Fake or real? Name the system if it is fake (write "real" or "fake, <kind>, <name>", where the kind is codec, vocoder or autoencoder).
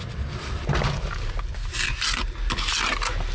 real